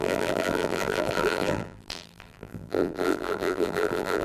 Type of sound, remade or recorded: remade